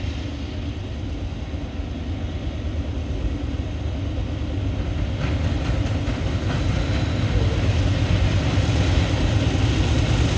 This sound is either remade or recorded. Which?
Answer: recorded